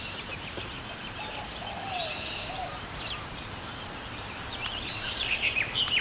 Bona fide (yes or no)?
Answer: no